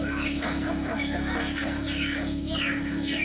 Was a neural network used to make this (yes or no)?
yes